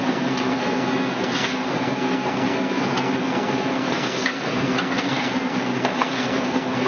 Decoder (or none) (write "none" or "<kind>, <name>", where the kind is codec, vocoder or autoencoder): codec, SNAC